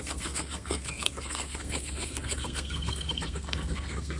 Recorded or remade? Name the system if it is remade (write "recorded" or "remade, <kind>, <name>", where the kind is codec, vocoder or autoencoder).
remade, codec, SNAC